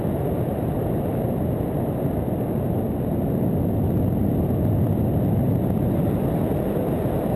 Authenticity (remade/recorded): recorded